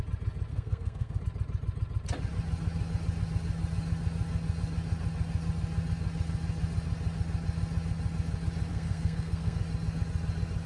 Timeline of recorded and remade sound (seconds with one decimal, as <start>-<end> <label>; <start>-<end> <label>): 0.0-0.5 recorded; 0.5-1.2 remade; 1.2-8.7 recorded; 8.7-9.6 remade; 9.6-10.7 recorded